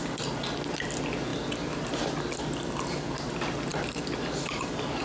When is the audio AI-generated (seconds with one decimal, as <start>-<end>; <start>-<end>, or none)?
1.3-2.0; 3.7-5.0